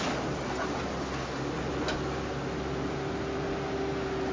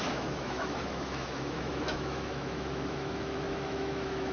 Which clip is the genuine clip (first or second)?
first